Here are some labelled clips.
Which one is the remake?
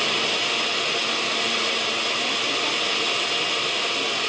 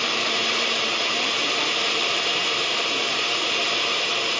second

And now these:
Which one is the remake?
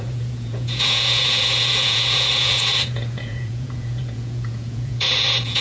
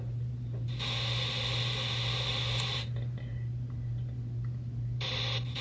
first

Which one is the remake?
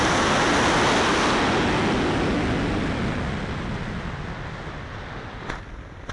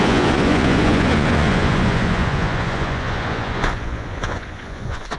second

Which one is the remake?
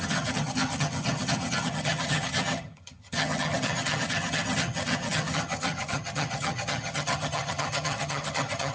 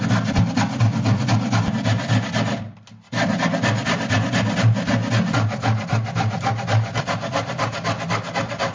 first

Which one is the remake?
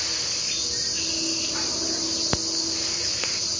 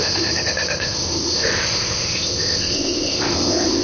second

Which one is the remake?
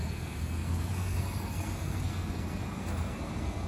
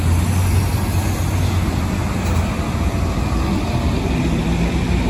first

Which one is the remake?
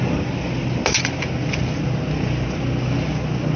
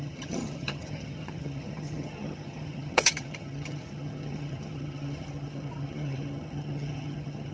second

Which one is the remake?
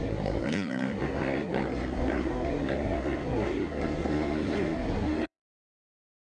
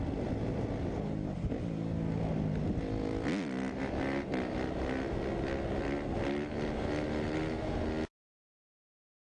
first